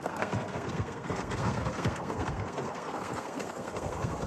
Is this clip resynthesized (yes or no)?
yes